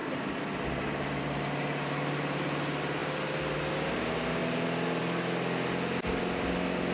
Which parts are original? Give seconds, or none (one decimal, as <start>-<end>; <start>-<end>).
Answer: 0.0-6.9